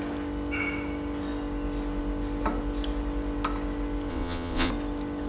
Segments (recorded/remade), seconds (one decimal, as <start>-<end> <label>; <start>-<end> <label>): 0.0-4.1 recorded; 4.1-4.7 remade; 4.7-5.3 recorded